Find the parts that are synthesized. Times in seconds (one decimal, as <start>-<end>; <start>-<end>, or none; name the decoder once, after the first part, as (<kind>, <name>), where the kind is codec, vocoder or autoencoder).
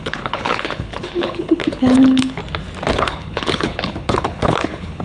0.0-2.4 (codec, HILCodec); 2.9-5.0